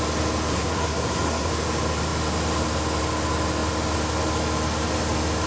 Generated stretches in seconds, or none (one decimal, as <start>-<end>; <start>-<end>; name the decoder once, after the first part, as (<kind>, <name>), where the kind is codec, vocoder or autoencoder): 0.5-1.5 (codec, SNAC)